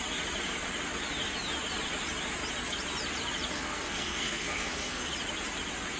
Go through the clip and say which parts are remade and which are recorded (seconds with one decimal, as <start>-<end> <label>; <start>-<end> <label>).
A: 0.0-3.5 recorded; 3.5-5.1 remade; 5.1-6.0 recorded